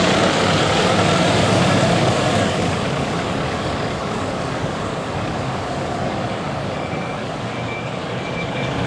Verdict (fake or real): fake